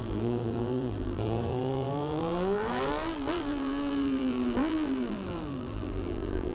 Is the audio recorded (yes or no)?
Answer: no